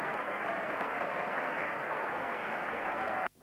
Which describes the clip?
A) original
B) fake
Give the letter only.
B